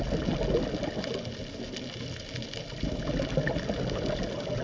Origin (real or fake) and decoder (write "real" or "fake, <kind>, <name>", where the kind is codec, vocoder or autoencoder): real